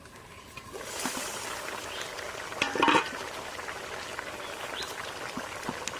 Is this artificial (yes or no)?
no